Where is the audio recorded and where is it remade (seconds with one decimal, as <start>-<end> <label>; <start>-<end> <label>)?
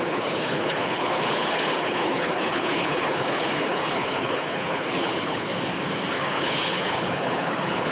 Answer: 0.0-5.5 remade; 5.5-6.1 recorded; 6.1-7.9 remade